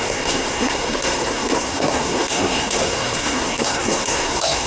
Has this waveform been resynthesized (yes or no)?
yes